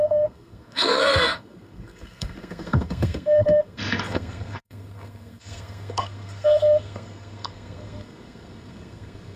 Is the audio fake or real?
fake